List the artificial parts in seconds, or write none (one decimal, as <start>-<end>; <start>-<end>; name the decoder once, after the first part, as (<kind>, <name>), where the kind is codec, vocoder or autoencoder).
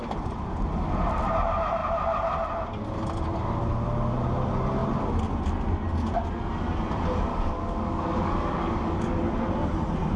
7.3-9.2 (codec, DAC)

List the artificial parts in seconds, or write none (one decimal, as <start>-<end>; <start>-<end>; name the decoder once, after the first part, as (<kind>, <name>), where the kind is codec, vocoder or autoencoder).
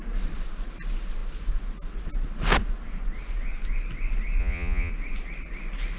4.4-4.9 (vocoder, Vocos)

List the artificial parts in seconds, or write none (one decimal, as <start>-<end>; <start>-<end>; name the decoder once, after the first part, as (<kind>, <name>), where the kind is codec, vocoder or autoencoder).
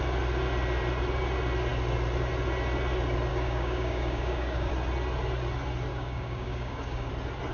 3.3-4.7 (codec, DAC); 5.9-7.1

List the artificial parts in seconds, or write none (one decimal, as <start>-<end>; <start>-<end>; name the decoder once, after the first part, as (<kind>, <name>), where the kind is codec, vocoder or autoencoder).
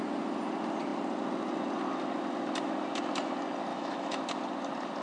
3.7-4.2 (autoencoder, DAC-VAE)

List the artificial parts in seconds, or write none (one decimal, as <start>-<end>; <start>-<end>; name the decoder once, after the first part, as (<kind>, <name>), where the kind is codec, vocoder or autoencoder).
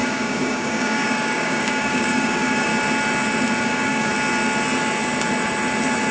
0.0-2.7 (codec, DAC); 3.6-4.1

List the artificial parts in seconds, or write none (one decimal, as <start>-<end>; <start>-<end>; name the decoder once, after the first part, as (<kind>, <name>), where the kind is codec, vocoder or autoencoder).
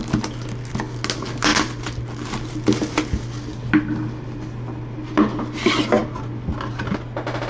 none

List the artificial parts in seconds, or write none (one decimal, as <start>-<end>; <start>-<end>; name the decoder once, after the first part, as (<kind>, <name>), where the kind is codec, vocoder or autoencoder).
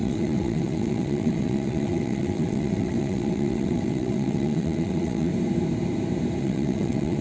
0.0-5.3 (vocoder, WaveNeXt); 6.4-7.2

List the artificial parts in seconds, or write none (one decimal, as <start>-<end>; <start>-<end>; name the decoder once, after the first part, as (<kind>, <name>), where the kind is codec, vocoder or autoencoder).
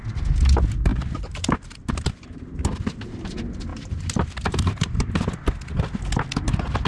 0.9-2.6 (vocoder, BigVGAN v2); 3.7-5.2